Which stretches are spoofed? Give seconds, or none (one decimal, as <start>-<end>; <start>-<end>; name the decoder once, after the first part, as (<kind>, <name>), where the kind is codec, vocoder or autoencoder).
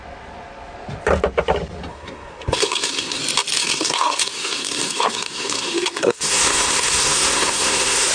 1.9-3.2 (codec, SNAC); 3.6-8.1